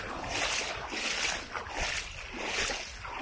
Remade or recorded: recorded